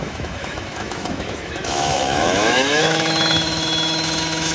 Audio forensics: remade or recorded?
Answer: remade